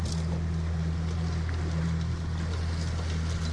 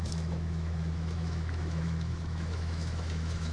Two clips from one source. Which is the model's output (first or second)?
second